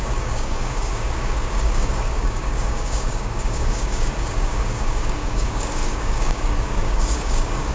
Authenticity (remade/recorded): remade